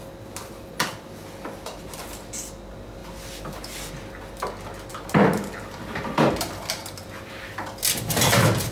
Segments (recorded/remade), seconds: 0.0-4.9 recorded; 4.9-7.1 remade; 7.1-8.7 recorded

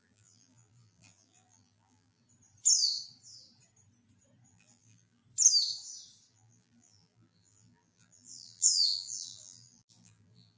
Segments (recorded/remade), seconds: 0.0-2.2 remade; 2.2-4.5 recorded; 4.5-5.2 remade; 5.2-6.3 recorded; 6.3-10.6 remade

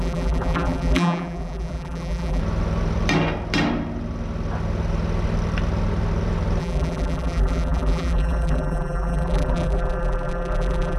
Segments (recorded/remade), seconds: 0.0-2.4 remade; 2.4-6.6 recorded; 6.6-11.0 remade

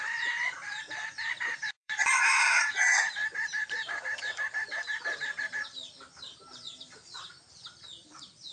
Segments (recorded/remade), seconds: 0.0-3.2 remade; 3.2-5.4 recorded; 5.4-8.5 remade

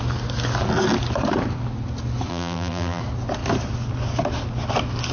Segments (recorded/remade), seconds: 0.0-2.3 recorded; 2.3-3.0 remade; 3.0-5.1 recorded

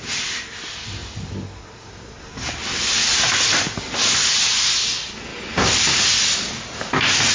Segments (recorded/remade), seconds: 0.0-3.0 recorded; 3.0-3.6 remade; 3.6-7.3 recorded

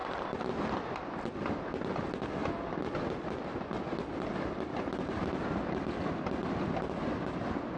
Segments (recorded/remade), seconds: 0.0-7.8 recorded

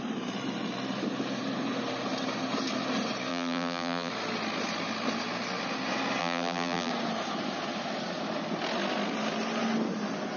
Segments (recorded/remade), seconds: 0.0-3.3 recorded; 3.3-4.1 remade; 4.1-6.2 recorded; 6.2-6.9 remade; 6.9-10.4 recorded